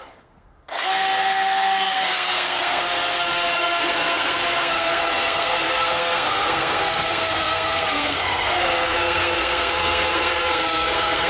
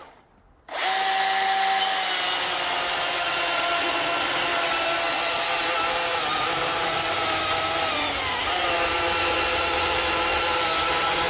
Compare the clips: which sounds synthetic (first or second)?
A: first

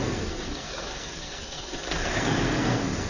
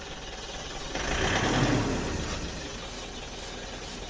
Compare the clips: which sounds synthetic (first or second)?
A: first